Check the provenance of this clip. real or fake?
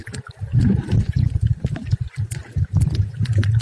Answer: real